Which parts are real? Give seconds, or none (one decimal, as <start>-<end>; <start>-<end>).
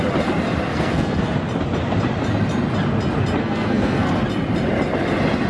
0.0-0.7; 1.2-3.4; 4.1-5.5